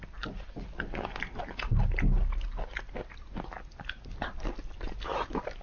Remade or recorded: recorded